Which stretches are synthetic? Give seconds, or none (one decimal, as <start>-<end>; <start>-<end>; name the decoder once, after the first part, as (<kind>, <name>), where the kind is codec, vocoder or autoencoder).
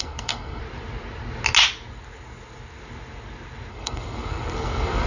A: 0.0-0.6 (codec, SNAC); 3.7-5.1